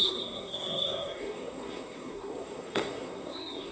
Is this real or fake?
fake